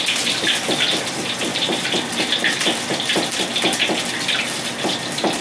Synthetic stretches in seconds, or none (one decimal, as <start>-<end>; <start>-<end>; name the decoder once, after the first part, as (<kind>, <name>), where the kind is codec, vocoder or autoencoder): 1.5-2.2 (vocoder, BigVGAN v2); 3.5-4.0